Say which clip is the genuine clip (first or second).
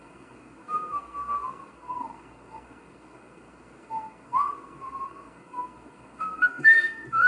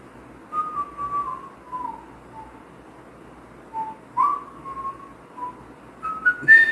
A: second